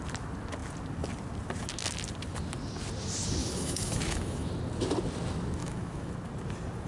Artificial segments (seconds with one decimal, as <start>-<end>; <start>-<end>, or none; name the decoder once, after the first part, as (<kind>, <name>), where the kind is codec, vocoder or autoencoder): 3.4-4.5 (autoencoder, DAC-VAE); 5.6-6.1